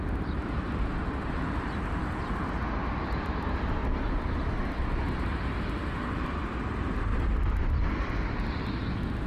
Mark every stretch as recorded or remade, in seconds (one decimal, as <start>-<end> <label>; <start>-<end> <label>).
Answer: 0.0-3.8 recorded; 3.8-5.1 remade; 5.1-7.1 recorded; 7.1-7.8 remade; 7.8-9.3 recorded